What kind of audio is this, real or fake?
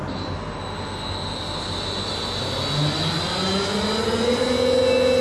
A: real